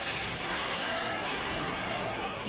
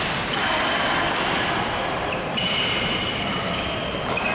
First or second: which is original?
second